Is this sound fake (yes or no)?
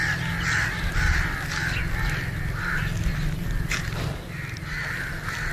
no